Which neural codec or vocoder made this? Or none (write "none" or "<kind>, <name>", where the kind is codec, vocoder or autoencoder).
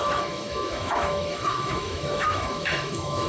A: autoencoder, DAC-VAE